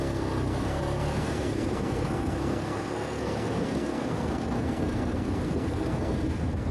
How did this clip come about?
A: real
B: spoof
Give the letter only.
B